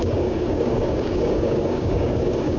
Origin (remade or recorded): remade